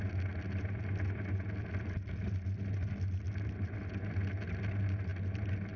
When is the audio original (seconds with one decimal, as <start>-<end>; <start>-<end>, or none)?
0.0-5.8